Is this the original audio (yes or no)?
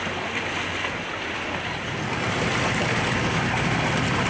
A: yes